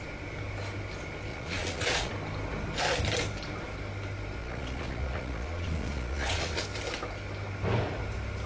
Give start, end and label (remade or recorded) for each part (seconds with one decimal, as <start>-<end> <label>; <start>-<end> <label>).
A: 0.0-1.3 recorded; 1.3-2.1 remade; 2.1-4.4 recorded; 4.4-6.6 remade; 6.6-8.5 recorded